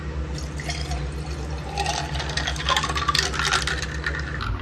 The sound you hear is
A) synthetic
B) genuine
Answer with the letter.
B